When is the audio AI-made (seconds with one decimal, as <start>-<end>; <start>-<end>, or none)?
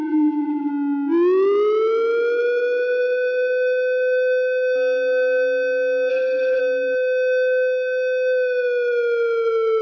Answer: 0.0-0.7; 6.1-6.6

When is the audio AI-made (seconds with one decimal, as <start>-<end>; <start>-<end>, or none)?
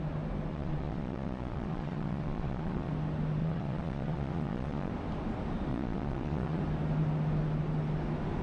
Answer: 0.5-2.9; 3.4-4.9; 5.7-6.6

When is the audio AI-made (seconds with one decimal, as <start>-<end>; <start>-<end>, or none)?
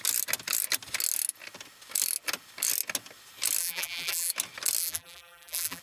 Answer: 3.6-4.3; 4.8-5.8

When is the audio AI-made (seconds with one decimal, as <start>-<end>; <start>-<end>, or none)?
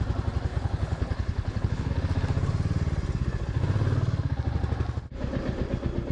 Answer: 0.5-1.9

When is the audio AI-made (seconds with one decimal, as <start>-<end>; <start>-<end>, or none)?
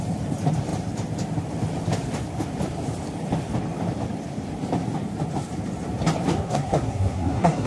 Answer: 6.3-7.7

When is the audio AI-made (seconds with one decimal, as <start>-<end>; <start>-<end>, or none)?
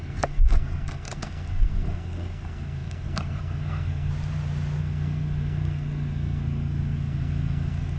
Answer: 0.0-4.1; 4.8-8.0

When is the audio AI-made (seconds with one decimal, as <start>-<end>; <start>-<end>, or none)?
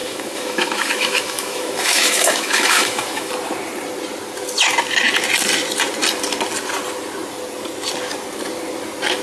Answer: 0.0-3.3